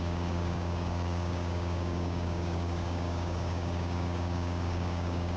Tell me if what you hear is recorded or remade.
remade